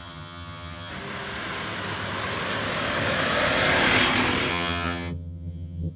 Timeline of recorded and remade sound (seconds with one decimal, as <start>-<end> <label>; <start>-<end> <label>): 0.0-0.9 remade; 0.9-4.5 recorded; 4.5-6.0 remade